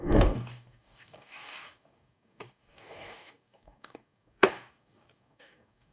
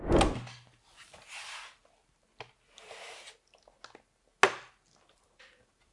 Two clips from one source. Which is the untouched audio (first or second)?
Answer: second